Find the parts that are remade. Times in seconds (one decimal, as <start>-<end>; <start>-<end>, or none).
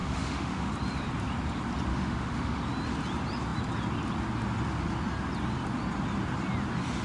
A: 0.0-0.7; 1.9-2.6